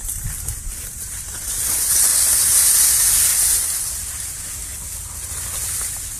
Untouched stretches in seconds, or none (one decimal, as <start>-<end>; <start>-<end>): 0.0-6.2